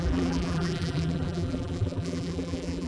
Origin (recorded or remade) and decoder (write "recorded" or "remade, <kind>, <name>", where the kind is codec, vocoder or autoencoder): remade, vocoder, BigVGAN v2